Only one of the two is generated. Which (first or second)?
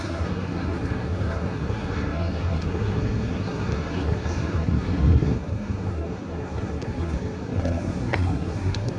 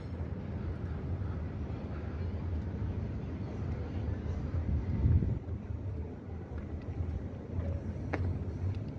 first